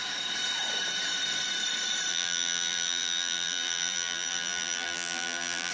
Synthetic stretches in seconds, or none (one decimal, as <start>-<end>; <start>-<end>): 2.1-5.7